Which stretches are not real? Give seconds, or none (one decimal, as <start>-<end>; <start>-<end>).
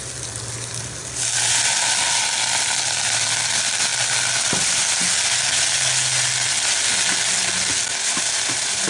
none